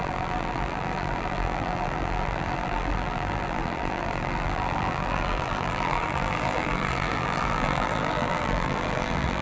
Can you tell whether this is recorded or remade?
remade